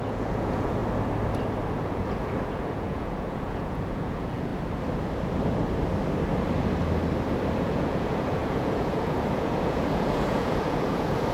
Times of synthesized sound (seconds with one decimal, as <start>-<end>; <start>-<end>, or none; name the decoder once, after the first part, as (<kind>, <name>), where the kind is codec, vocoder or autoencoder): 0.0-0.8 (vocoder, Vocos); 1.8-4.5; 7.6-11.3